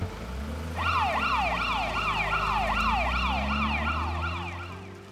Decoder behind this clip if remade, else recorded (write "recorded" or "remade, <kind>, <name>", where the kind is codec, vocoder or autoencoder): recorded